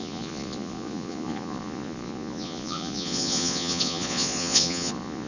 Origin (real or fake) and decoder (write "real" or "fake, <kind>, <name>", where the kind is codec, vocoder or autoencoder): fake, vocoder, Vocos